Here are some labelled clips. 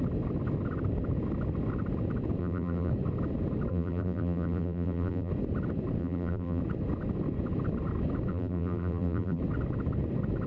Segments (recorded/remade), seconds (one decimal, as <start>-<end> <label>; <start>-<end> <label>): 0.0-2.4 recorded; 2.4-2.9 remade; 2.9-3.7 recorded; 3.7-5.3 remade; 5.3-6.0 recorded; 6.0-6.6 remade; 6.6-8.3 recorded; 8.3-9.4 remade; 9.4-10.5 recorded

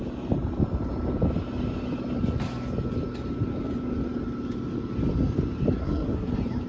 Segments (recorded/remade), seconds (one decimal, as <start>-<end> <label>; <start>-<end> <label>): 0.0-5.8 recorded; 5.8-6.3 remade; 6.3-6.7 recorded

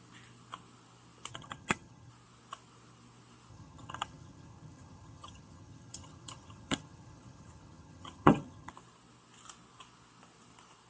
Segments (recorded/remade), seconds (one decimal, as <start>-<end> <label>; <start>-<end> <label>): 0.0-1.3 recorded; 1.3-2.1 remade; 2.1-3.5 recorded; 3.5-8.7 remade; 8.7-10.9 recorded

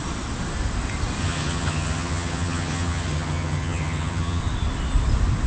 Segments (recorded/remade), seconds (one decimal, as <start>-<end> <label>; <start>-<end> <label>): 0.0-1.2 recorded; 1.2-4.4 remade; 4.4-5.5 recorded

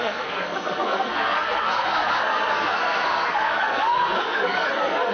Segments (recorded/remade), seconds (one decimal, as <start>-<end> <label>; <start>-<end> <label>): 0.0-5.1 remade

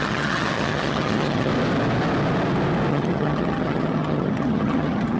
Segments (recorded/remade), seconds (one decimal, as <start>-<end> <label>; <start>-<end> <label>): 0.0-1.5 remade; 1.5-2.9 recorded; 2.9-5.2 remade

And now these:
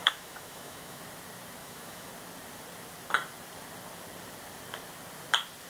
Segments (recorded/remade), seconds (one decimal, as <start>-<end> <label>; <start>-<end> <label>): 0.0-1.0 remade; 1.0-1.6 recorded; 1.6-2.1 remade; 2.1-5.7 recorded